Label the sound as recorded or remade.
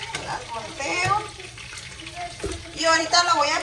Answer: remade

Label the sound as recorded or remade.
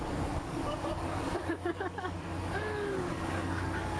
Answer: remade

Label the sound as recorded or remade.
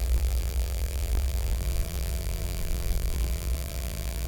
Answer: remade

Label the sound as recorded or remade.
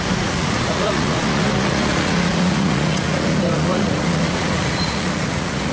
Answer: remade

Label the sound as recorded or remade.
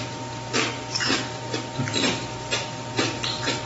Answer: recorded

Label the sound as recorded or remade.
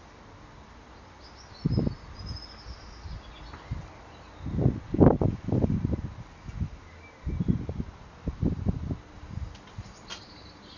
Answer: recorded